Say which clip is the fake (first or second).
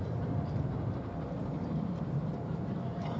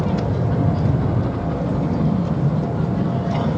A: first